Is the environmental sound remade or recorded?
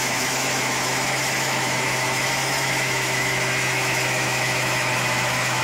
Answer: remade